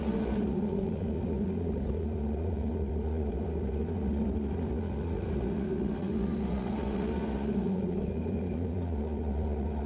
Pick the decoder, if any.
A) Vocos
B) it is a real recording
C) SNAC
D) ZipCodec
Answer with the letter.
A